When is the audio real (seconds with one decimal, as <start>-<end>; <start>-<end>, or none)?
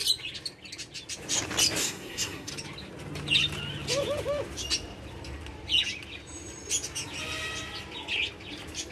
0.0-1.8; 2.5-8.9